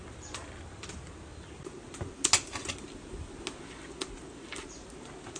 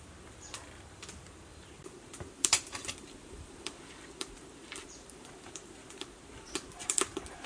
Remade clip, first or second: second